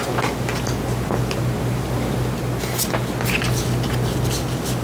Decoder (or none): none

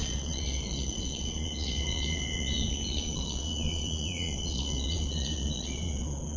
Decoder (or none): vocoder, Vocos